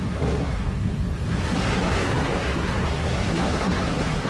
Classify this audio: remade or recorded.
remade